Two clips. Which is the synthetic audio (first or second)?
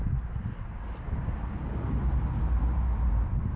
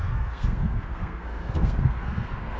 second